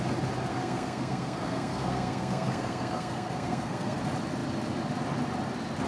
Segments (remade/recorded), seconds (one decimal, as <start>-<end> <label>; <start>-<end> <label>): 0.0-0.5 recorded; 0.5-4.0 remade; 4.0-5.9 recorded